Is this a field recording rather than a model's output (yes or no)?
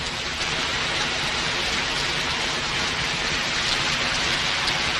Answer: no